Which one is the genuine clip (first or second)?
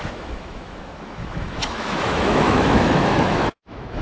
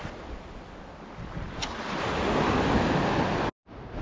second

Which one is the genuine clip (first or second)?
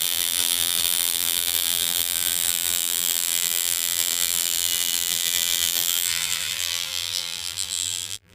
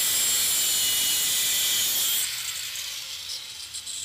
second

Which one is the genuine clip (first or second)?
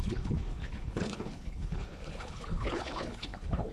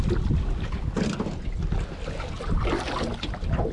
second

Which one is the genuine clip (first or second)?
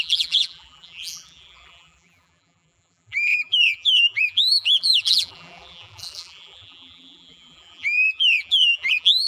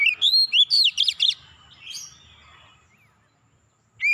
second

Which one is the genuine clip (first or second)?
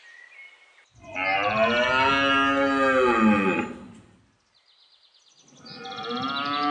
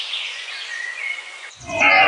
first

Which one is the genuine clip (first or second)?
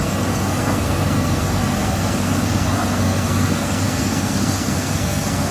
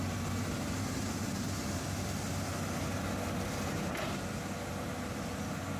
second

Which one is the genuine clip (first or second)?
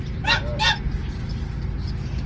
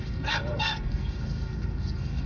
first